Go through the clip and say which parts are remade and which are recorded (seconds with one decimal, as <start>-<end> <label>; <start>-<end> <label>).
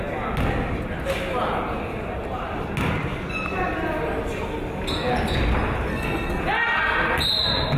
0.0-5.9 recorded; 5.9-6.4 remade; 6.4-7.8 recorded